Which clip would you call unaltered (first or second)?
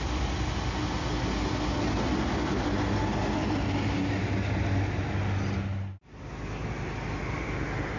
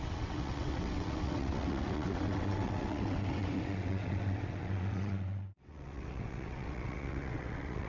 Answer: first